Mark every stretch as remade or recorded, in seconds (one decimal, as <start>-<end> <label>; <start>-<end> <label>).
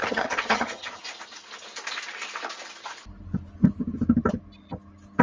0.0-1.0 remade; 1.0-5.2 recorded